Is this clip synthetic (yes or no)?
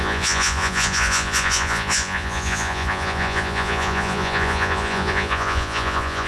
yes